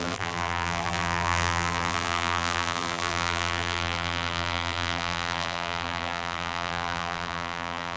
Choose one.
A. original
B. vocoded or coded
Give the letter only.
B